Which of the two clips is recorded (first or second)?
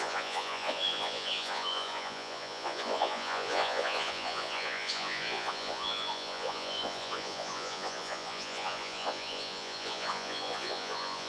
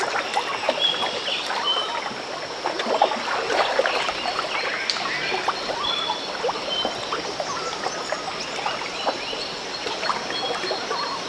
second